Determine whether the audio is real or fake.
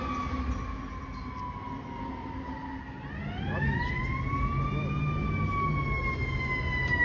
real